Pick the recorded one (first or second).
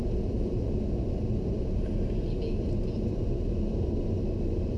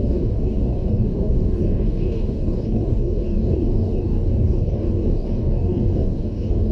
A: first